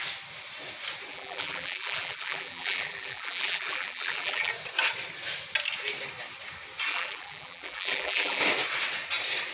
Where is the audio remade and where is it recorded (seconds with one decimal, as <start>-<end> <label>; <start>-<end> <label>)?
0.0-1.1 recorded; 1.1-4.5 remade; 4.5-6.9 recorded; 6.9-8.4 remade; 8.4-9.5 recorded